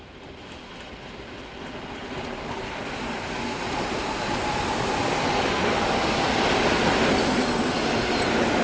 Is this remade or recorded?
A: recorded